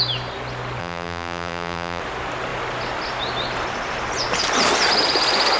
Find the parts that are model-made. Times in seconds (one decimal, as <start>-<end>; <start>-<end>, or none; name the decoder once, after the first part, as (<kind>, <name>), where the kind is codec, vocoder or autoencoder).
0.8-2.0 (vocoder, BigVGAN v2)